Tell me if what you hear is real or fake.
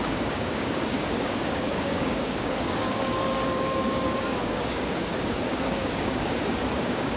fake